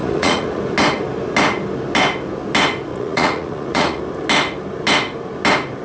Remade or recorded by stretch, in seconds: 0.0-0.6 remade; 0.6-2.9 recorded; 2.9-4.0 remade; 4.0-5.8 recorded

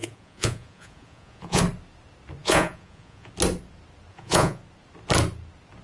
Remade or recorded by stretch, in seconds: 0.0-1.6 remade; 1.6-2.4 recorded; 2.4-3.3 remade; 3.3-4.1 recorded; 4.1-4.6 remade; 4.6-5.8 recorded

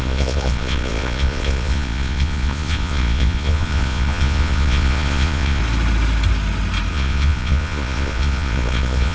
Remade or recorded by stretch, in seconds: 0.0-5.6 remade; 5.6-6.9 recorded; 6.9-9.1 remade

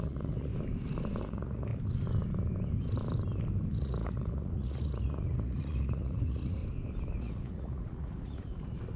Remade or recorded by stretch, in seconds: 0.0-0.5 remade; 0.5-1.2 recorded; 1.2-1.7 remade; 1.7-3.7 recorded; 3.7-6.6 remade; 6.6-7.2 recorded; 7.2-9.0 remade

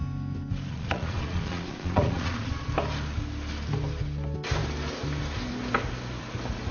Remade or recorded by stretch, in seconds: 0.0-0.7 recorded; 0.7-2.7 remade; 2.7-6.7 recorded

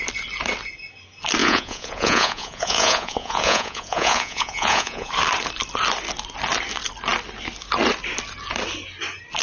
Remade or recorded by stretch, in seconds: 0.0-1.4 recorded; 1.4-5.1 remade; 5.1-9.4 recorded

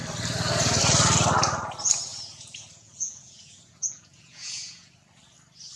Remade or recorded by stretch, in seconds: 0.0-2.1 recorded; 2.1-4.9 remade; 4.9-5.8 recorded

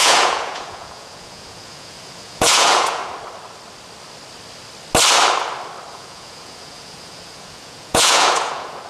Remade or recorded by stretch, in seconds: 0.0-3.0 remade; 3.0-5.9 recorded; 5.9-8.9 remade